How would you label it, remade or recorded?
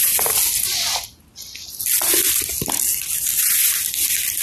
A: recorded